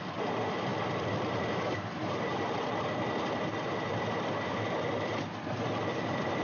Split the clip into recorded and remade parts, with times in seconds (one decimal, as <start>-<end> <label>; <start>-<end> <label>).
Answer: 0.0-6.4 recorded